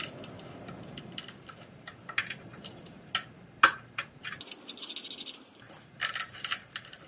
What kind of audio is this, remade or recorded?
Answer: recorded